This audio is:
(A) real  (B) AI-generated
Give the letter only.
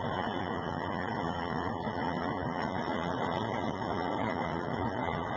B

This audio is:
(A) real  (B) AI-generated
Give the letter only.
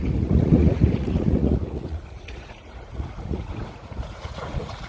B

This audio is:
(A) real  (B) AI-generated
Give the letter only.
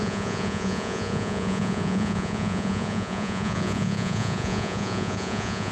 B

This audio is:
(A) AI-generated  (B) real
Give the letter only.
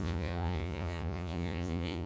A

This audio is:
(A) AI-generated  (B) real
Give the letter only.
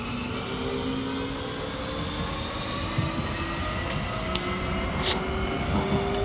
B